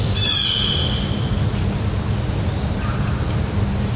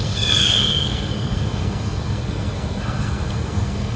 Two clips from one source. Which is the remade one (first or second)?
second